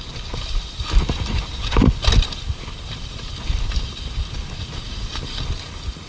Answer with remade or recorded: recorded